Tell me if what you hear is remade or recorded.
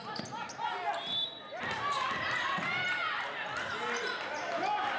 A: recorded